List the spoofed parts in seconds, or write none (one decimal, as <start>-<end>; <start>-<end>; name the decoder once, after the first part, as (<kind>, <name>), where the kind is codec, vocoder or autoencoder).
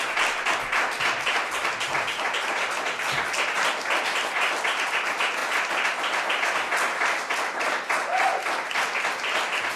none